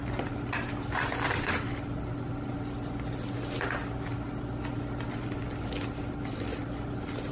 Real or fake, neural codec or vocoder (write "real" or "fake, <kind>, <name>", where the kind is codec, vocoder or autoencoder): fake, vocoder, BigVGAN v2